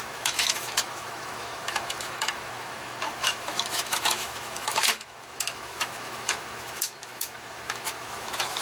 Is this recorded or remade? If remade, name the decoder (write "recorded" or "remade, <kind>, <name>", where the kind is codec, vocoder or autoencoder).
remade, autoencoder, DAC-VAE